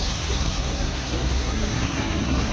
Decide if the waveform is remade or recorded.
remade